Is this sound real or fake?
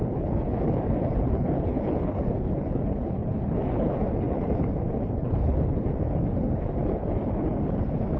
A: fake